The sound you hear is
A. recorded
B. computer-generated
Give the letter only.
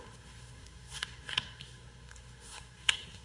B